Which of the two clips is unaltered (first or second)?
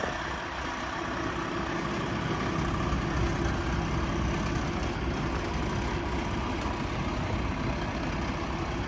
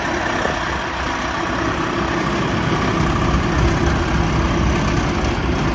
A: first